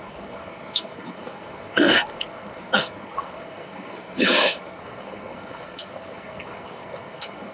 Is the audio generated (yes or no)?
yes